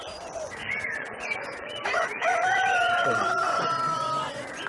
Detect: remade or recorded remade